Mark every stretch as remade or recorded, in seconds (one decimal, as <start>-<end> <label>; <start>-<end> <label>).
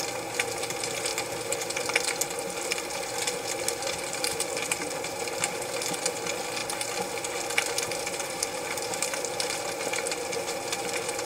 0.0-11.2 recorded